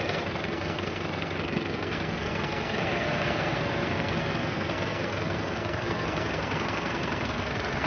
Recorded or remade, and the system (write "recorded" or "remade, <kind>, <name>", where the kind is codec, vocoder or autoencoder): remade, codec, SNAC